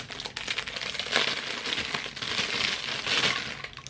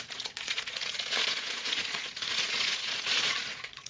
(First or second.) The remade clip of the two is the second